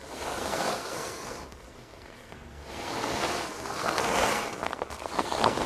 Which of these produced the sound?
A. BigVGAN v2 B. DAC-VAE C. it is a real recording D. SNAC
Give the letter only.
D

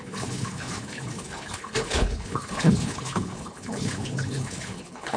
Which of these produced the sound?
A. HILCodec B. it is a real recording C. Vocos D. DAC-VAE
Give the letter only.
A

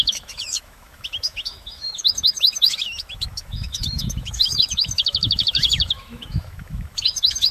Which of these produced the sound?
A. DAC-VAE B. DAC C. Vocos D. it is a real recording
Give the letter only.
A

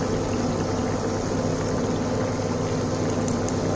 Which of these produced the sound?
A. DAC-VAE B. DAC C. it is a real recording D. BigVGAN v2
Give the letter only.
C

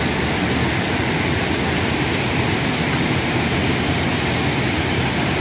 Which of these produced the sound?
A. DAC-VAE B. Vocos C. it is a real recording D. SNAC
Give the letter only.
C